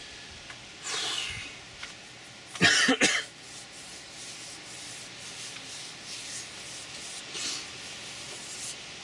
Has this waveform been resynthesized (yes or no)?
no